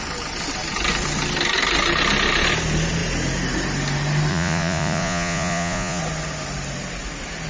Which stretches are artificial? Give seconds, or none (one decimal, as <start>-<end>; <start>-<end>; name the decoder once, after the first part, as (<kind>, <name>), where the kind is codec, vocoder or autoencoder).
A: 4.3-6.0 (vocoder, Vocos)